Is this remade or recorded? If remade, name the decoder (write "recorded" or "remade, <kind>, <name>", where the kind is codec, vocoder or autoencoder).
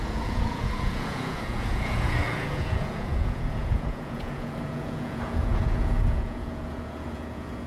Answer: remade, vocoder, Vocos